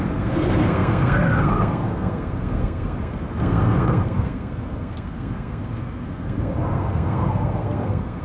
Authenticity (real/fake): fake